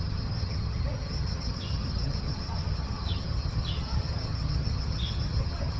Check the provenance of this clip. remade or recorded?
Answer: remade